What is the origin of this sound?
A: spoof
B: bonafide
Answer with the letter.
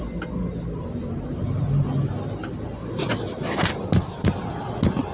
B